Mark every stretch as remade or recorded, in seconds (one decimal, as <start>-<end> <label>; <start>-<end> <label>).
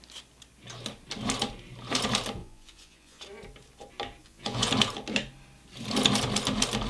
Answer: 0.0-2.4 recorded; 2.4-3.2 remade; 3.2-4.2 recorded; 4.2-4.7 remade; 4.7-6.9 recorded